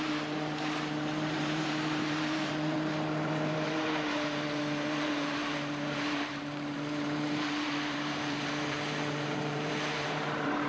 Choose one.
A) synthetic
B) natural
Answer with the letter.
A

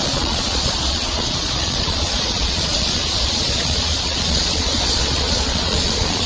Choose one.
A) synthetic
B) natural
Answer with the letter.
A